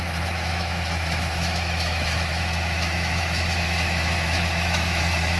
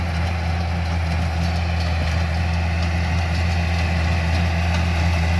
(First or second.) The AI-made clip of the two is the first